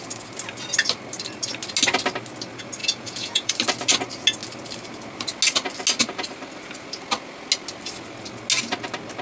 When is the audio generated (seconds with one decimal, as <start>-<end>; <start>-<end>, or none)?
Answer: 2.8-3.5